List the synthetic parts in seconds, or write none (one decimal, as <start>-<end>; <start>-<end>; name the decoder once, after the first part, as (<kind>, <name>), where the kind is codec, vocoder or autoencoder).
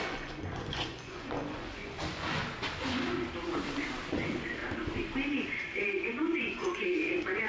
0.0-2.4 (vocoder, Vocos); 4.1-4.6; 5.3-7.5